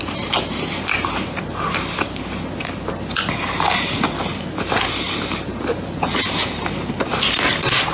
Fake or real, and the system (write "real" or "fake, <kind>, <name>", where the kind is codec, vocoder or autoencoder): real